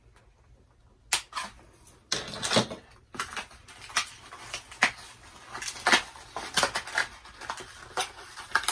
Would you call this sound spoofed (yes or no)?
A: no